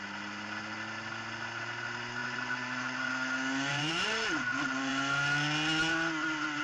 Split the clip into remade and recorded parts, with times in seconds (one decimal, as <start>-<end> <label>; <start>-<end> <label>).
0.0-2.2 recorded; 2.2-3.1 remade; 3.1-3.7 recorded; 3.7-4.9 remade; 4.9-6.6 recorded